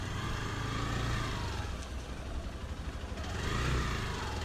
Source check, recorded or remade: recorded